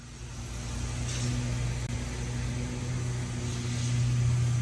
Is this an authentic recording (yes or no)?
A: yes